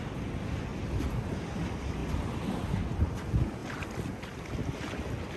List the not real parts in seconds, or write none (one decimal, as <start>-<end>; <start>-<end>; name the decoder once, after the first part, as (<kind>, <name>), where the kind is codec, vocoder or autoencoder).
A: none